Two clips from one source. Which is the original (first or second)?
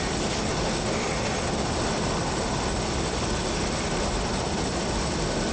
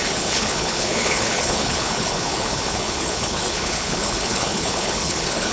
first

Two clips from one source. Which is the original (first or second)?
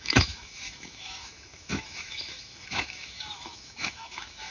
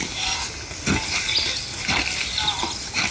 second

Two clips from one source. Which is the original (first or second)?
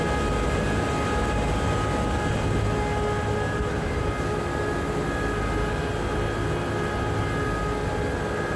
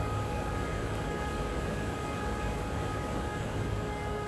first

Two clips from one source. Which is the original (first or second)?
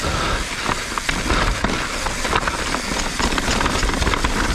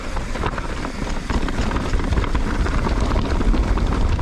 first